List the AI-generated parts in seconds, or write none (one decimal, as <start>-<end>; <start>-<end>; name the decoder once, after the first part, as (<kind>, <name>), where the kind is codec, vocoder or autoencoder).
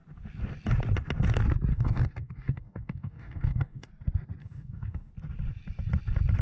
1.7-3.9 (codec, DAC); 4.4-5.1